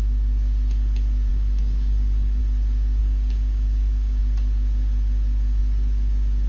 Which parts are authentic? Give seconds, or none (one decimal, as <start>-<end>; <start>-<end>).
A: 0.0-1.3; 2.4-3.0; 4.2-6.5